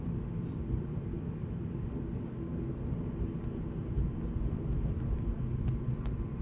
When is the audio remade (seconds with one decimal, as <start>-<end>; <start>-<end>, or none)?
0.0-1.4; 4.5-6.4